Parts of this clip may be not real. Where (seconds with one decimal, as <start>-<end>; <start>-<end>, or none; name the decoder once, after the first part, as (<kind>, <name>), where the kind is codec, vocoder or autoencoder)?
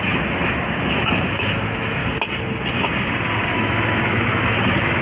0.0-2.0 (autoencoder, DAC-VAE); 3.5-5.0